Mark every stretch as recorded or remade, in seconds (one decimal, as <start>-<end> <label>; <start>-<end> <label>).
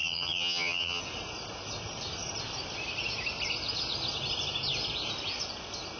0.0-1.0 remade; 1.0-6.0 recorded